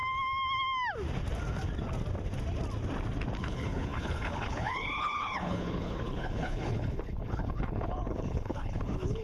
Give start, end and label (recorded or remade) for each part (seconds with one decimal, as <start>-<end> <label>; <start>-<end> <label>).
0.0-3.4 recorded; 3.4-9.2 remade